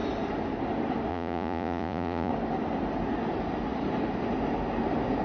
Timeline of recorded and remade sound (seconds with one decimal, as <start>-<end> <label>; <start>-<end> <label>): 0.0-1.1 recorded; 1.1-2.3 remade; 2.3-5.2 recorded